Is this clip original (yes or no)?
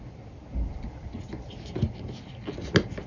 yes